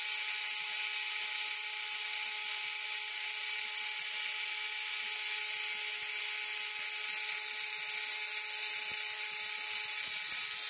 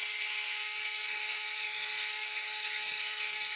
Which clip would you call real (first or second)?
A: first